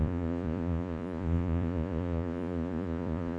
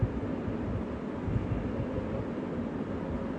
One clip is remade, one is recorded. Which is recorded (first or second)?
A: second